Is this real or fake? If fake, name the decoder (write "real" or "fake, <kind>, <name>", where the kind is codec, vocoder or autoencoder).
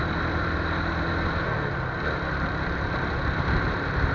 real